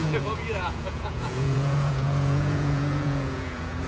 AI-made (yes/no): yes